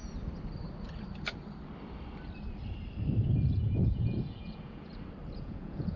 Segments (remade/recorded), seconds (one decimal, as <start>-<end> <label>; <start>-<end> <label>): 0.0-3.6 recorded; 3.6-4.9 remade; 4.9-5.4 recorded; 5.4-6.0 remade